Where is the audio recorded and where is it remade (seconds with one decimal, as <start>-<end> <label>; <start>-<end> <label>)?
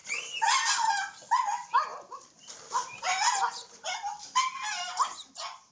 0.0-5.7 recorded